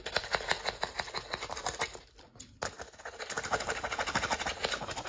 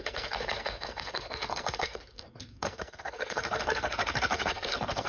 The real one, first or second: first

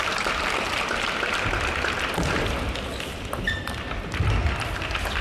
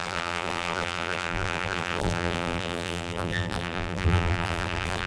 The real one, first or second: first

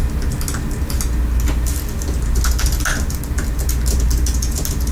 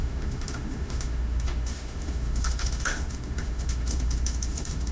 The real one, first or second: first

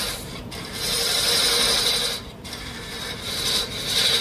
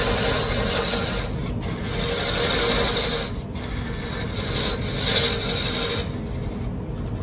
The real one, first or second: second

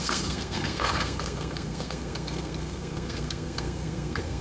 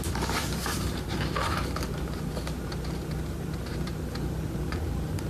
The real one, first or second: second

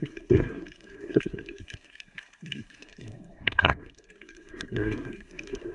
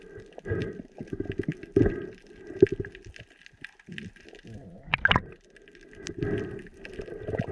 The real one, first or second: second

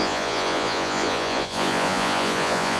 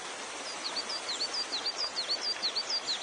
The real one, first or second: second